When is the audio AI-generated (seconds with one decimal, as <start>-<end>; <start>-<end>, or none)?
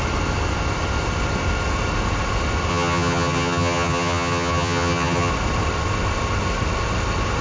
2.7-5.3